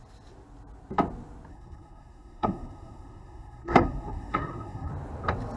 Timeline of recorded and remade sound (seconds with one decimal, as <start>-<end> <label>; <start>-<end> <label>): 0.0-1.5 recorded; 1.5-4.9 remade; 4.9-5.6 recorded